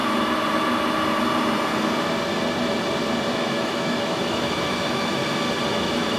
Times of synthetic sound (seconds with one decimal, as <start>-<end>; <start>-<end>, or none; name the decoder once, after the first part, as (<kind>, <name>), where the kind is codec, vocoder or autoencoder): 3.3-5.2 (autoencoder, DAC-VAE); 5.7-6.2